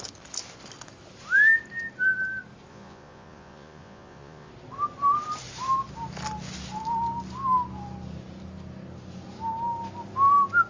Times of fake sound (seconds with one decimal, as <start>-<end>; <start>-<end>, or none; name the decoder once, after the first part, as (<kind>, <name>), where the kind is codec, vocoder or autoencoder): 2.7-4.5 (vocoder, Vocos)